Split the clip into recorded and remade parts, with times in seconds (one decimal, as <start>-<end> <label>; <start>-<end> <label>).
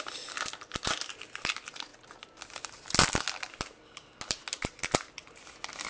0.0-5.9 recorded